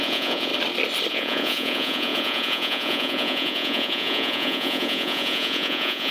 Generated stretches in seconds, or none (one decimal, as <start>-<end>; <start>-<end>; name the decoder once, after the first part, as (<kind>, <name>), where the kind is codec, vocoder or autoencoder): 0.0-0.5 (vocoder, Vocos); 1.1-6.1